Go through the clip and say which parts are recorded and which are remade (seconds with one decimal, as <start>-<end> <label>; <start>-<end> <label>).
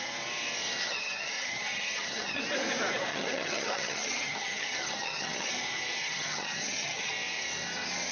0.0-0.8 recorded; 0.8-2.4 remade; 2.4-3.1 recorded; 3.1-5.5 remade; 5.5-6.0 recorded; 6.0-7.1 remade; 7.1-8.1 recorded